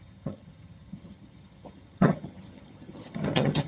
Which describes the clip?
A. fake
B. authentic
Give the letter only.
A